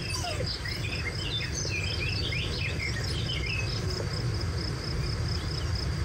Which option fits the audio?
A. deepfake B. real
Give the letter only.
B